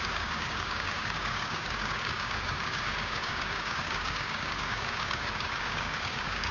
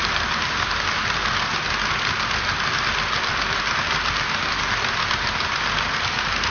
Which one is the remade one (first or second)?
first